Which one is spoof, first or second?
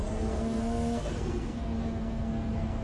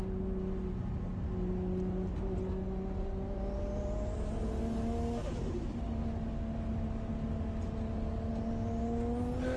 first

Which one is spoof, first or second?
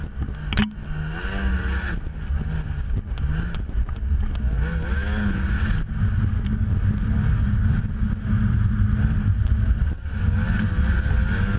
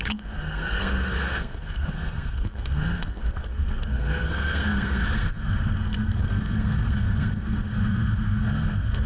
second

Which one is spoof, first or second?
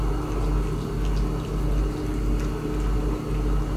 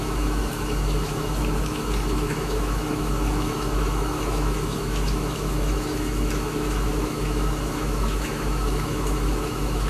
second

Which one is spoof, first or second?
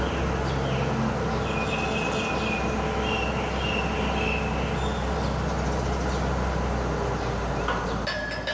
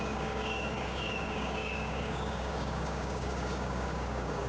second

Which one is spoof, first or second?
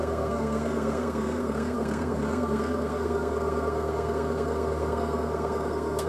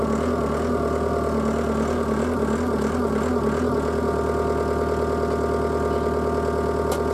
first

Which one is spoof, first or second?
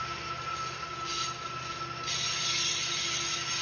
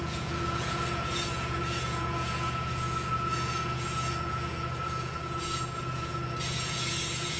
second